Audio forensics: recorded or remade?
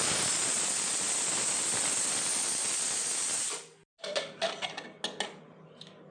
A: recorded